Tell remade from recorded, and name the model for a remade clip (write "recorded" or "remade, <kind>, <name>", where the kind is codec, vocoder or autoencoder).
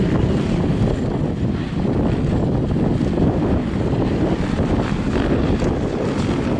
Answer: recorded